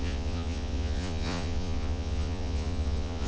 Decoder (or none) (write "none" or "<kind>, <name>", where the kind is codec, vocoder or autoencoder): vocoder, Vocos